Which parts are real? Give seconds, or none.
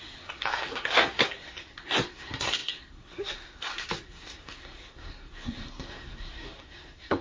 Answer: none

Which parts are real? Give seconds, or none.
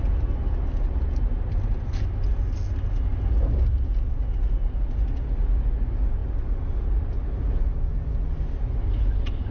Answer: 0.0-9.5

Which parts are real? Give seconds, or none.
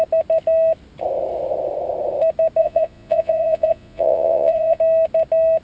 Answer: 0.0-2.6; 4.8-5.6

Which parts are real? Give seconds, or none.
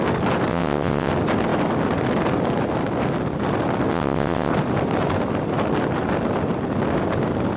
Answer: 0.0-0.5; 1.1-3.9; 4.5-7.6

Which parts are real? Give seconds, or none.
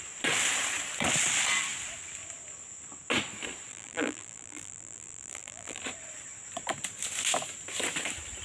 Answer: 0.0-3.7; 5.8-8.4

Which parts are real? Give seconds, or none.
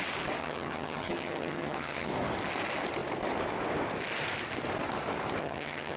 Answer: 0.0-0.4; 2.1-5.4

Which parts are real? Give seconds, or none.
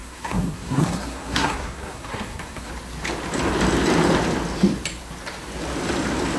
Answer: 2.7-6.4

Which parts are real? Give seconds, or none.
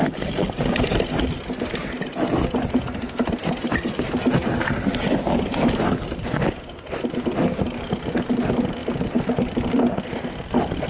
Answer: 0.0-10.9